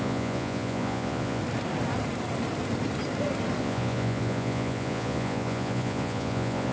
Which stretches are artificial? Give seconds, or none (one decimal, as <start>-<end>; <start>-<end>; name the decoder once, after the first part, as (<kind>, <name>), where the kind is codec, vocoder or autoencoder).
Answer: 0.0-1.4 (vocoder, Vocos); 3.6-6.7